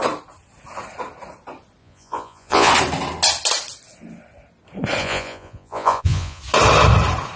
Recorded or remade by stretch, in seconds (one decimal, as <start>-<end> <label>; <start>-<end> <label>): 0.0-1.8 recorded; 1.8-2.7 remade; 2.7-5.0 recorded; 5.0-6.4 remade; 6.4-7.4 recorded